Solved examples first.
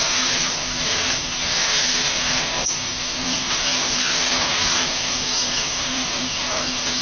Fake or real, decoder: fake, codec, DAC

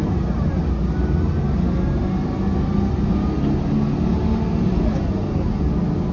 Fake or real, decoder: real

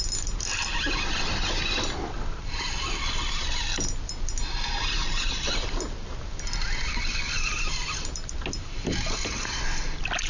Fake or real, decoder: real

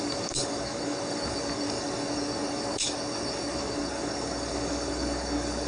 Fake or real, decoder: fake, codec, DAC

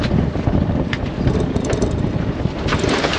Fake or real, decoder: real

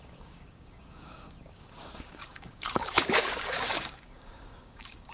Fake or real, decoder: fake, codec, DAC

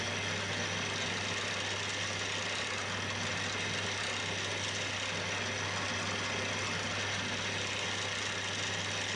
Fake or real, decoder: real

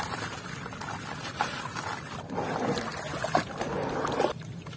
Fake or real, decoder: real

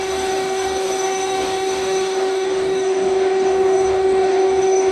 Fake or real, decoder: fake, codec, DAC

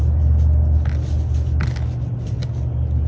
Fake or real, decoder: real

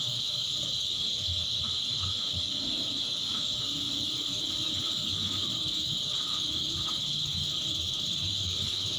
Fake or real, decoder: fake, codec, DAC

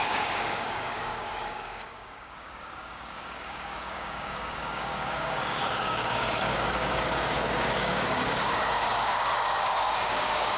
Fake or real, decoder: fake, codec, DAC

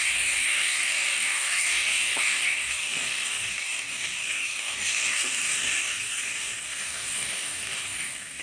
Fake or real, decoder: fake, codec, DAC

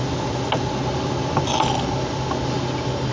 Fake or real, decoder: real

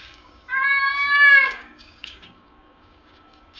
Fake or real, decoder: fake, codec, DAC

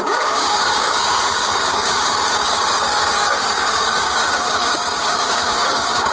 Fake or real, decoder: fake, codec, DAC